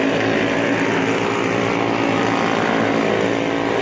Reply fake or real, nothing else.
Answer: real